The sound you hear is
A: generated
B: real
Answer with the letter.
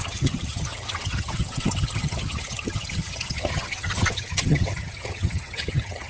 A